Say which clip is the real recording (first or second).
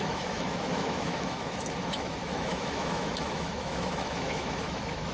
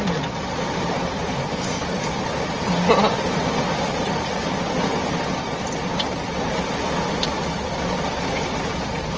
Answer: second